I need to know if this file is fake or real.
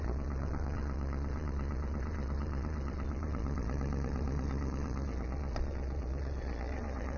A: fake